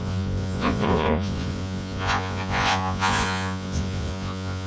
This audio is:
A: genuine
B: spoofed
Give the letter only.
B